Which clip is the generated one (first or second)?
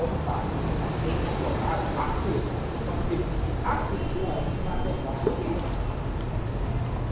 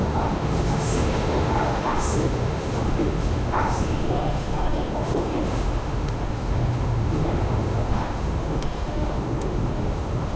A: second